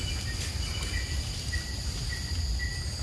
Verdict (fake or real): real